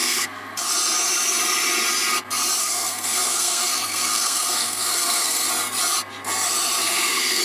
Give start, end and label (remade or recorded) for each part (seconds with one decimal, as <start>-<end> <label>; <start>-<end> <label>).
0.0-0.7 remade; 0.7-2.6 recorded; 2.6-5.5 remade; 5.5-6.8 recorded; 6.8-7.4 remade